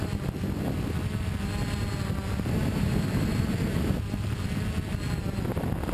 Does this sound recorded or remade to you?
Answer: recorded